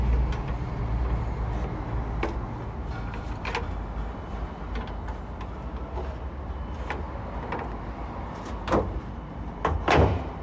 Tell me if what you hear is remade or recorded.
recorded